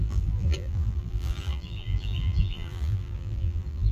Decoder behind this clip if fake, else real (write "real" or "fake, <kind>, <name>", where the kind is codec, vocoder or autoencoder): fake, vocoder, BigVGAN v2